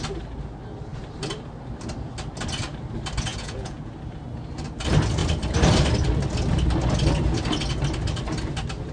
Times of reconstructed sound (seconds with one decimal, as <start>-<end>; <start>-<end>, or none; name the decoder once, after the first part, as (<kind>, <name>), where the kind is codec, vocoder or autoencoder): 3.3-3.9 (vocoder, Vocos)